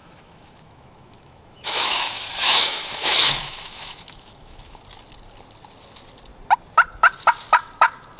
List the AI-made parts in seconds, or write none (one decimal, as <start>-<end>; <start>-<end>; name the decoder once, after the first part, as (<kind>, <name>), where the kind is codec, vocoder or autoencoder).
0.0-4.8 (autoencoder, DAC-VAE)